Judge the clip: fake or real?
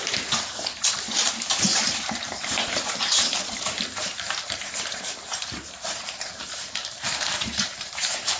fake